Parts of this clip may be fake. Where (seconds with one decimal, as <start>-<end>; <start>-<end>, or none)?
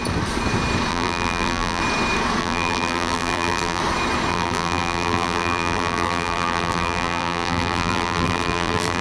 0.9-1.8; 2.4-3.8; 4.3-9.0